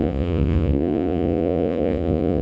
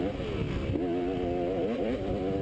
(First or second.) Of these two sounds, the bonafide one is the second